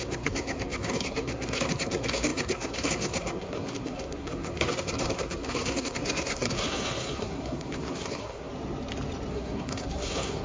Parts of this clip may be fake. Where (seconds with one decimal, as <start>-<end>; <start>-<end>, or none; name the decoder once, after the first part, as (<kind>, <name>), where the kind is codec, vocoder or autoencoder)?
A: 0.0-8.5 (codec, SNAC); 9.3-10.4